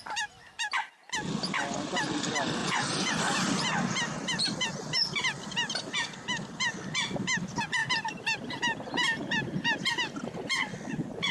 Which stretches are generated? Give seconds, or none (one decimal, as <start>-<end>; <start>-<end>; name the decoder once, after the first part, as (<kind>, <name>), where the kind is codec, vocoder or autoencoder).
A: 2.6-3.2 (vocoder, Vocos)